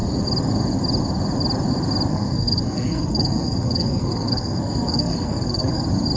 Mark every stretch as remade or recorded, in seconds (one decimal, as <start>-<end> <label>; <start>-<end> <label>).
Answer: 0.0-2.1 recorded; 2.1-5.8 remade; 5.8-6.2 recorded

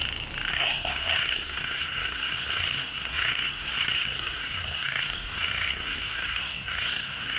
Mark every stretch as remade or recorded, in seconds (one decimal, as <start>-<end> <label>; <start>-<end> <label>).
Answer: 0.0-0.5 recorded; 0.5-7.4 remade

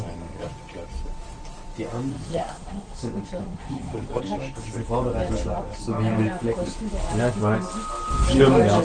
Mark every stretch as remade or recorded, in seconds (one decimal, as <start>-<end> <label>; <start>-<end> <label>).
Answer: 0.0-2.1 recorded; 2.1-3.0 remade; 3.0-3.4 recorded; 3.4-4.2 remade; 4.2-8.8 recorded

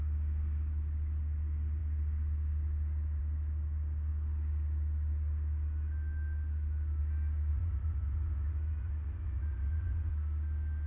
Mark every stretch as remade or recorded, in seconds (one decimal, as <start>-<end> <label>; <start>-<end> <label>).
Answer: 0.0-7.5 recorded; 7.5-10.1 remade; 10.1-10.9 recorded

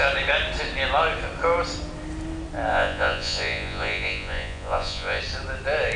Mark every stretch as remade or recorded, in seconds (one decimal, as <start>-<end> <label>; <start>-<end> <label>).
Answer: 0.0-2.7 recorded; 2.7-5.2 remade; 5.2-6.0 recorded